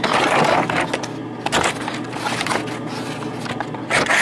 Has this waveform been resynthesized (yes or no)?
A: no